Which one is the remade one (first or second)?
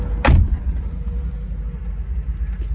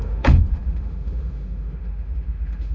second